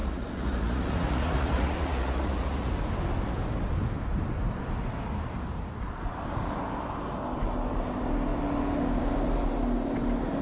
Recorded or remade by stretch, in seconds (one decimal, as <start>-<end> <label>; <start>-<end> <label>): 0.0-2.7 remade; 2.7-10.4 recorded